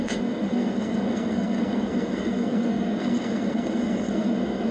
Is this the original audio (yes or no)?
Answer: no